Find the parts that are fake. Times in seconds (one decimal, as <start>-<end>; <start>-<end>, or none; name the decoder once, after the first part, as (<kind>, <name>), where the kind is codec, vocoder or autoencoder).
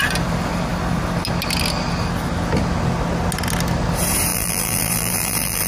4.3-5.7 (vocoder, BigVGAN v2)